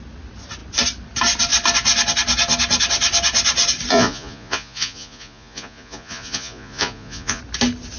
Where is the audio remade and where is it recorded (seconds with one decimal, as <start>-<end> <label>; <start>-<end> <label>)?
0.0-3.9 recorded; 3.9-7.4 remade; 7.4-8.0 recorded

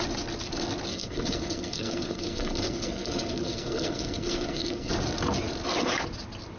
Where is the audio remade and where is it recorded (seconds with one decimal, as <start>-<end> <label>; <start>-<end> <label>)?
0.0-0.9 recorded; 0.9-4.9 remade; 4.9-6.6 recorded

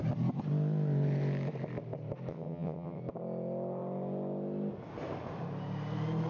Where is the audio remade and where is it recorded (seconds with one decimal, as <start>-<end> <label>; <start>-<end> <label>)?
0.0-2.3 recorded; 2.3-3.0 remade; 3.0-6.3 recorded